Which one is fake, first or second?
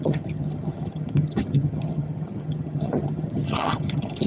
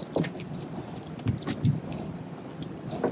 first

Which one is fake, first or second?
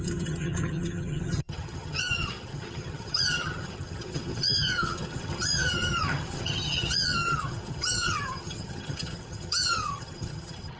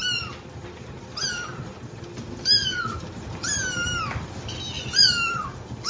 first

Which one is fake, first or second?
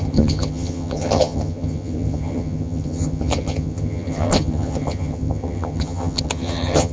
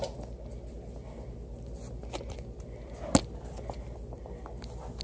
first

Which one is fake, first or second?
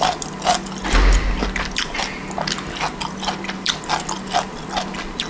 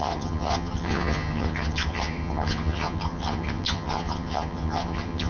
second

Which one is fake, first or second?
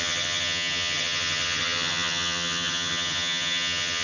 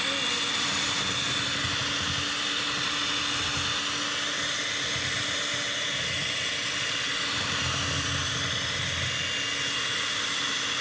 first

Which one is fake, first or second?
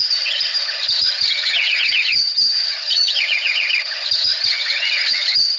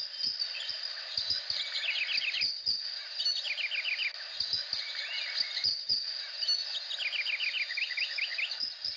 first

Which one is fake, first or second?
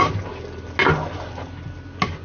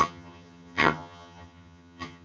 second